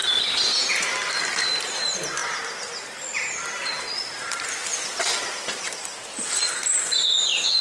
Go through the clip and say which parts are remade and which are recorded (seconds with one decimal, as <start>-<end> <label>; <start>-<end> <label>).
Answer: 0.0-7.6 recorded